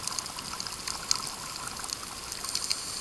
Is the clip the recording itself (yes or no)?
yes